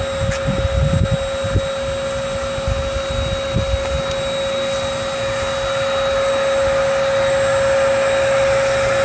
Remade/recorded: recorded